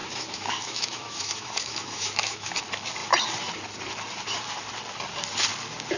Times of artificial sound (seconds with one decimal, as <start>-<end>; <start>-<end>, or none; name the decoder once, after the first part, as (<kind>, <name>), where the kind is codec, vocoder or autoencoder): 0.0-2.5 (autoencoder, DAC-VAE)